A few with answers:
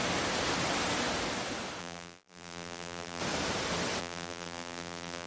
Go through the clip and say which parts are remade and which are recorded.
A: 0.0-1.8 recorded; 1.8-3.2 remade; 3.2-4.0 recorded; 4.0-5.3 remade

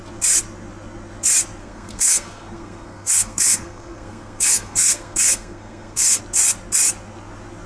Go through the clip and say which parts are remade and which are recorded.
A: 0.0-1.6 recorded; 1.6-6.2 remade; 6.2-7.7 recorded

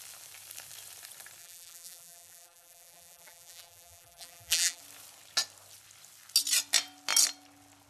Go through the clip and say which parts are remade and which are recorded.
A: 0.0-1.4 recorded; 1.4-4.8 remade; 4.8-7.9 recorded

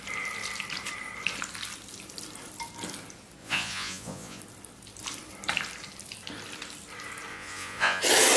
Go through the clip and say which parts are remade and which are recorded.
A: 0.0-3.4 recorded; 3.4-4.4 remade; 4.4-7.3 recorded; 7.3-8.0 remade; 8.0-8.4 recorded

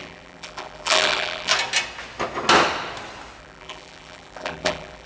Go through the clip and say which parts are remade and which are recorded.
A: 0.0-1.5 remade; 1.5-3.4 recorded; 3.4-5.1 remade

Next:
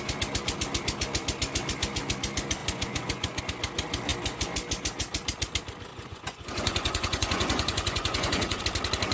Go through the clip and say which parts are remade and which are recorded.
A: 0.0-2.6 recorded; 2.6-3.4 remade; 3.4-5.9 recorded; 5.9-8.6 remade; 8.6-9.1 recorded

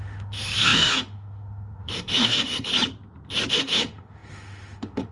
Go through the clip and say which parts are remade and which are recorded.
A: 0.0-2.7 remade; 2.7-3.5 recorded; 3.5-5.1 remade